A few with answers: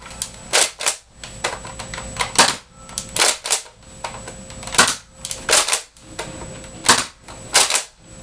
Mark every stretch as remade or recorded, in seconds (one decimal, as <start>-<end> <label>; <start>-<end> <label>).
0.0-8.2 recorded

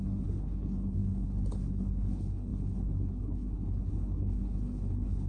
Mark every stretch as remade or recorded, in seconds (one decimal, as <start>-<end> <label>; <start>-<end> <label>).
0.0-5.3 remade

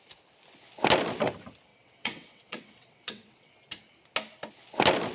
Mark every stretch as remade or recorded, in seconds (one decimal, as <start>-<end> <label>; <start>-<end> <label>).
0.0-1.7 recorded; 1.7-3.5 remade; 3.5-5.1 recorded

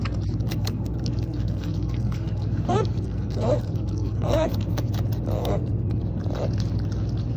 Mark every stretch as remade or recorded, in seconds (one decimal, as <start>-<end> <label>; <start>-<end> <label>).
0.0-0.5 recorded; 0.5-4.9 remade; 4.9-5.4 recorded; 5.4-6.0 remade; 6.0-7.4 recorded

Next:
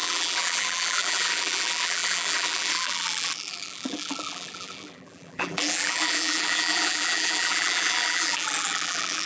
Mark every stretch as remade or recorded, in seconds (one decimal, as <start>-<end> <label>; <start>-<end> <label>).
0.0-9.3 remade